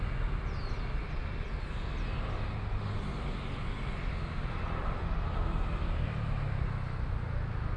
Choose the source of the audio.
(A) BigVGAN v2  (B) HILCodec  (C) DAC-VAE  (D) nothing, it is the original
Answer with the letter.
D